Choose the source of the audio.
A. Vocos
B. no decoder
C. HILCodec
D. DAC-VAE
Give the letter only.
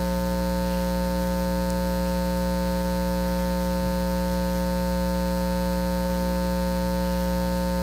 B